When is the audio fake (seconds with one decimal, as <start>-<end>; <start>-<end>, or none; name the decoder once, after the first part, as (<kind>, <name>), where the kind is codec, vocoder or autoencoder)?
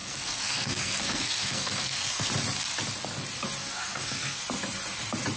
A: 0.0-2.3 (codec, SNAC); 3.6-4.4